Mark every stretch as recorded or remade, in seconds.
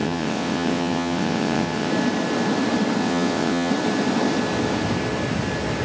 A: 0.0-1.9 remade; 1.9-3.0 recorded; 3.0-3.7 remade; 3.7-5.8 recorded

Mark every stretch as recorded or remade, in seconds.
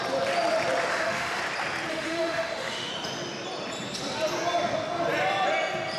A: 0.0-0.9 recorded; 0.9-1.4 remade; 1.4-1.9 recorded; 1.9-2.9 remade; 2.9-6.0 recorded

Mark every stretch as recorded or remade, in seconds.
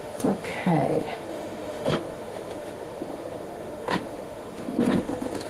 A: 0.0-5.5 remade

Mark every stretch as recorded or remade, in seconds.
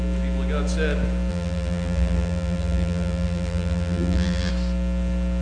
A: 0.0-1.3 recorded; 1.3-4.5 remade; 4.5-5.4 recorded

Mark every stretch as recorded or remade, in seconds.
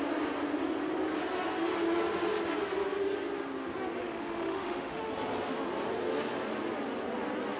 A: 0.0-4.0 recorded; 4.0-5.0 remade; 5.0-7.6 recorded